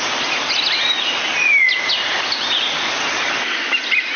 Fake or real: real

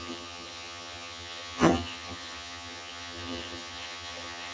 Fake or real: fake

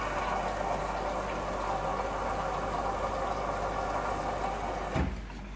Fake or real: real